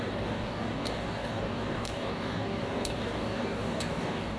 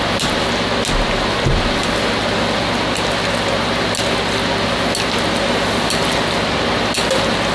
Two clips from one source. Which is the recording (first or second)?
second